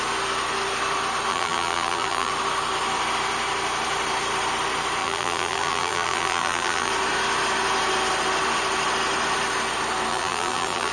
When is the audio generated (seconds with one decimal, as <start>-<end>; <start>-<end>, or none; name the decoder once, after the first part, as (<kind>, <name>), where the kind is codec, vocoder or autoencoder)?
1.3-2.3 (vocoder, BigVGAN v2); 5.0-6.9; 10.1-10.9